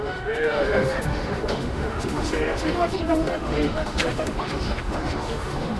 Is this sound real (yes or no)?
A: no